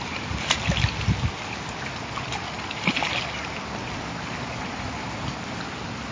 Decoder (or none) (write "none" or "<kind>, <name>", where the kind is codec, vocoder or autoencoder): none